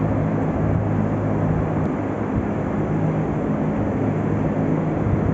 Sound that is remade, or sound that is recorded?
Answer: recorded